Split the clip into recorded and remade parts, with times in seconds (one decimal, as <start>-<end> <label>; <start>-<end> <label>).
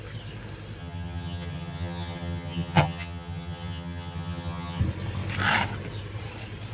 0.0-0.8 recorded; 0.8-4.8 remade; 4.8-6.7 recorded